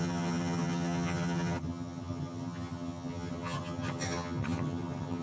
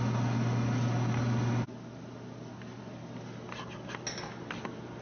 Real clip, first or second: second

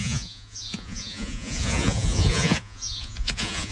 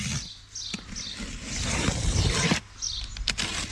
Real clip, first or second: second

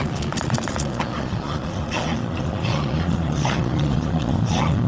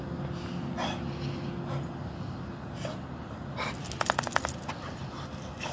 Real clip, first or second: second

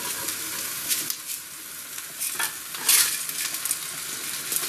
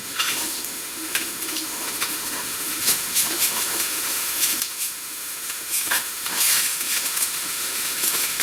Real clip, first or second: first